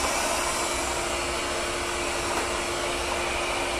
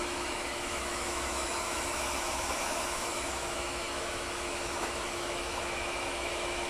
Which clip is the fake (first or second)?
second